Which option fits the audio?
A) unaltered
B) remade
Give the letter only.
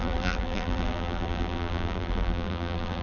B